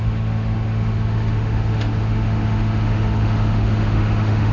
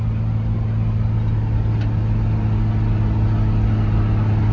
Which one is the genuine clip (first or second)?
second